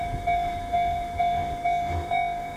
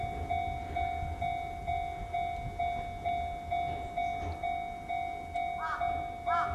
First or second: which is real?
second